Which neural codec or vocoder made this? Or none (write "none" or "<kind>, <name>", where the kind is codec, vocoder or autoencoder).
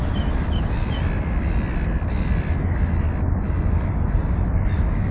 none